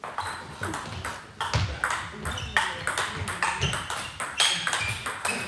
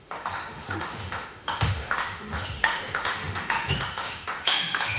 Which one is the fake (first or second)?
second